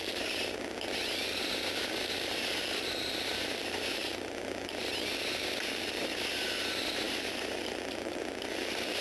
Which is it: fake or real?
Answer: fake